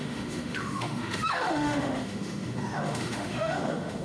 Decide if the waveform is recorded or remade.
remade